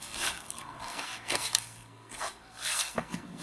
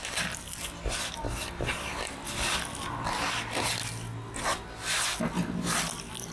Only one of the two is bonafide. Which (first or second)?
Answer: second